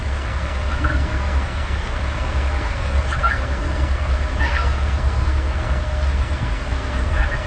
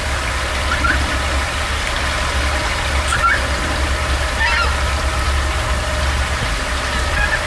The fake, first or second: first